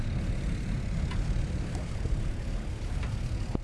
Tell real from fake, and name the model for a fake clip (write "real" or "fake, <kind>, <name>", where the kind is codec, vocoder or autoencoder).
real